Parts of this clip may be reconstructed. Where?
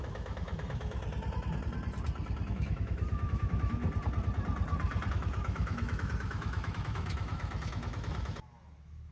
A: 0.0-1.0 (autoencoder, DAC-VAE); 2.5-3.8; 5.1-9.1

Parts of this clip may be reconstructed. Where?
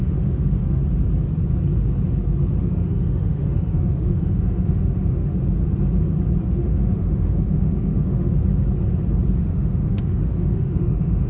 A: 0.0-0.8 (autoencoder, DAC-VAE); 2.6-5.3; 6.5-8.4; 9.4-11.3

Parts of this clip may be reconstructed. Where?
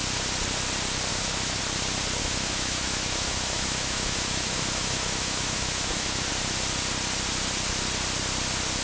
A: 1.1-1.6 (autoencoder, DAC-VAE); 2.2-6.3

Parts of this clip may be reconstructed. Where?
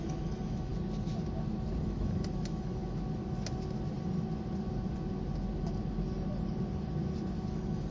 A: 0.0-0.7 (autoencoder, DAC-VAE); 1.8-2.8; 7.5-7.9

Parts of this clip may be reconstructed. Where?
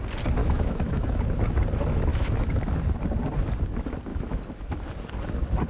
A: 0.4-1.2 (autoencoder, DAC-VAE); 2.1-2.6; 4.1-4.8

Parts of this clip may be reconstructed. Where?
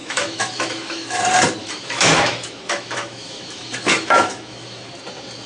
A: 0.0-1.2 (autoencoder, DAC-VAE); 1.6-4.9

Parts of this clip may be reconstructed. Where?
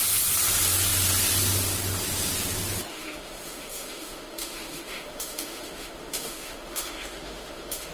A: 2.9-7.9 (autoencoder, DAC-VAE)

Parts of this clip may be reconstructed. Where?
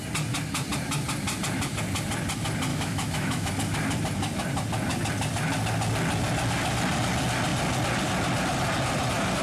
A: 2.7-3.5 (autoencoder, DAC-VAE)